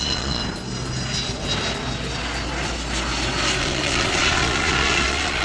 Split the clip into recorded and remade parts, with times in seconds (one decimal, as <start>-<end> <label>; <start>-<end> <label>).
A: 0.0-0.4 remade; 0.4-3.6 recorded; 3.6-5.4 remade